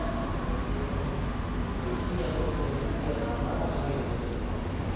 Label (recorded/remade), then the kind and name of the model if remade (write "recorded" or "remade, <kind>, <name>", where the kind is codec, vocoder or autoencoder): recorded